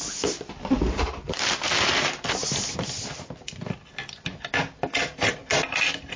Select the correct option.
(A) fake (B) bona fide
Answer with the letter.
B